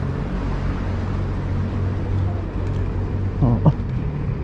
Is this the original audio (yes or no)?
yes